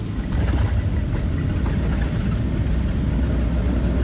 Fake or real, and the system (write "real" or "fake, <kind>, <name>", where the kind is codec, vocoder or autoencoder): real